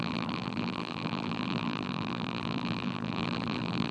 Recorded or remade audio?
remade